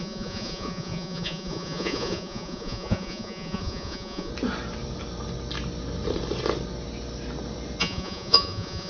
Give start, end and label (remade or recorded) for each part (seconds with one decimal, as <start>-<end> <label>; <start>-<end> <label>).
0.0-4.3 remade; 4.3-7.8 recorded; 7.8-8.9 remade